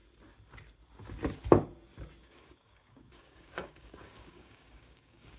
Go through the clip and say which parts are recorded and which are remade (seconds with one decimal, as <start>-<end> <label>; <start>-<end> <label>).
0.0-2.2 recorded; 2.2-5.4 remade